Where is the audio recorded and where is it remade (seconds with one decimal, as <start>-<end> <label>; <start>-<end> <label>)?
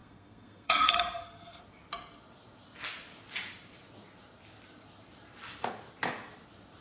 0.0-1.6 remade; 1.6-6.8 recorded